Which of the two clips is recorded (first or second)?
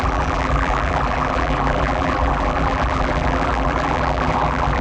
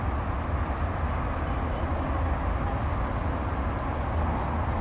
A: second